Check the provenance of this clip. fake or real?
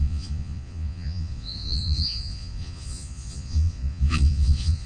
fake